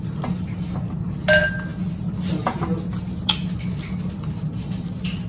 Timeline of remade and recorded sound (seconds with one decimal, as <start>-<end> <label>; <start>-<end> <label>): 0.0-5.3 recorded